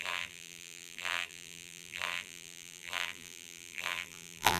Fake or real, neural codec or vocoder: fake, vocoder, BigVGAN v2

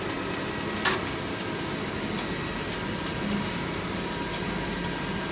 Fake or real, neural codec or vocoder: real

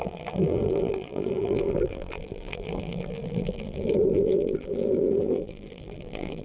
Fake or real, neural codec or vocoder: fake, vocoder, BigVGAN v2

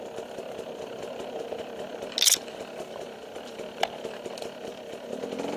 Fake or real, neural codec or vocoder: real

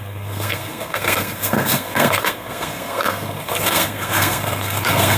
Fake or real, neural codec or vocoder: fake, codec, SNAC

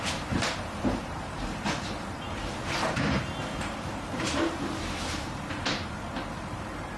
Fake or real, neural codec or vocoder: fake, vocoder, BigVGAN v2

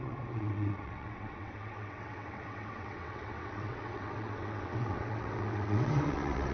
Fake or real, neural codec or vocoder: fake, vocoder, WaveNeXt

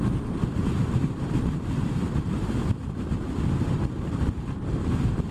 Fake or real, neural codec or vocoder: fake, vocoder, BigVGAN v2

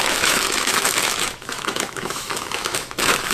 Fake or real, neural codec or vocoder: fake, autoencoder, DAC-VAE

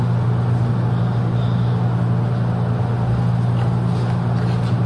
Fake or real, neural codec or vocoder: real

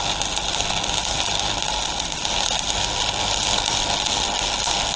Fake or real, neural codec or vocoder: real